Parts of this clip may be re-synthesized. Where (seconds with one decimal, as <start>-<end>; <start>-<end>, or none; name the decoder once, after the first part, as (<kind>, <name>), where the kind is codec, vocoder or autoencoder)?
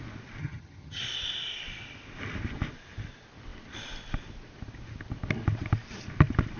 0.4-1.0 (vocoder, HiFi-GAN)